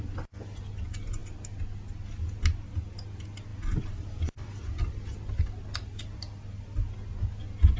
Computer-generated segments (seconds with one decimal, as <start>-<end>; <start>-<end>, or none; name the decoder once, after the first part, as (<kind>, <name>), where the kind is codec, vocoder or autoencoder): none